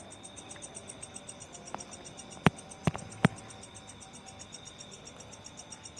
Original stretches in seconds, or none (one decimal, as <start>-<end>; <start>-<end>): 0.0-2.8; 3.4-6.0